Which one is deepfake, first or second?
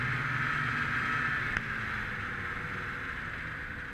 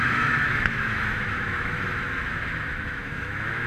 second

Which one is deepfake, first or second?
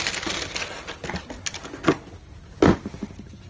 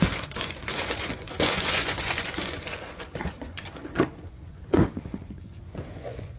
second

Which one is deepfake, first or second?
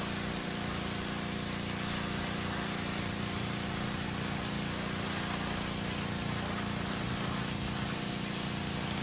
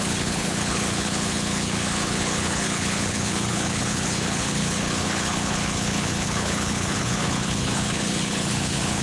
second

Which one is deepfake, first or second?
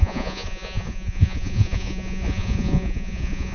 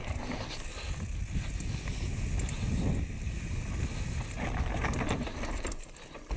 first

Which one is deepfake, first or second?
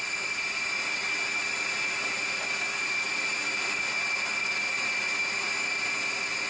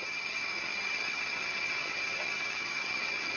second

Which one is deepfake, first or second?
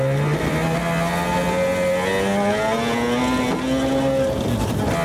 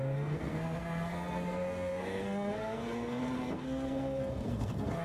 second